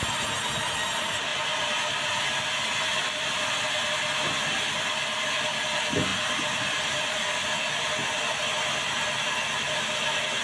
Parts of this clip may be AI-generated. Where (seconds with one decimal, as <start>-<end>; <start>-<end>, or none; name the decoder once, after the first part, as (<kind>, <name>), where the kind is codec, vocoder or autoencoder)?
none